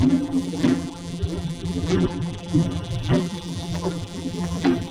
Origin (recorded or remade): remade